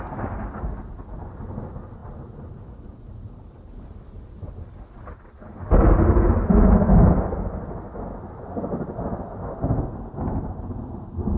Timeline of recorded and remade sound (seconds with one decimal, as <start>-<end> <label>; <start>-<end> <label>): 0.0-11.4 recorded